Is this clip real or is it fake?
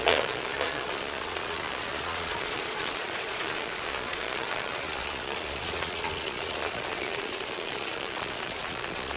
fake